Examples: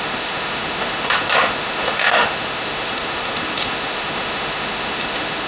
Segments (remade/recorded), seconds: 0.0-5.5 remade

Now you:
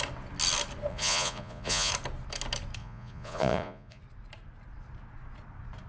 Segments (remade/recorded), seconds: 0.0-0.9 recorded; 0.9-1.9 remade; 1.9-2.8 recorded; 2.8-4.0 remade; 4.0-5.9 recorded

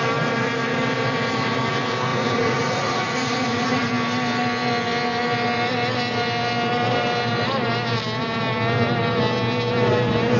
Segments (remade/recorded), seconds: 0.0-2.1 recorded; 2.1-3.9 remade; 3.9-10.4 recorded